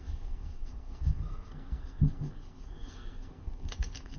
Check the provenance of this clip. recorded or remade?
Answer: remade